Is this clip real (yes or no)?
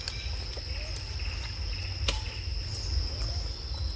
yes